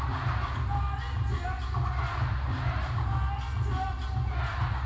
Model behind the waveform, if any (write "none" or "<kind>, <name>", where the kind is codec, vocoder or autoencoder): none